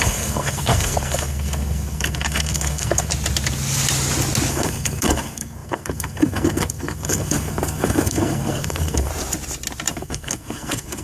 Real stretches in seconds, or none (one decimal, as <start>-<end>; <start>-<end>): 3.1-4.5; 9.1-9.9